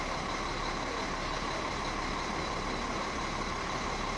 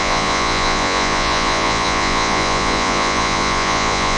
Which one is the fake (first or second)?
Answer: second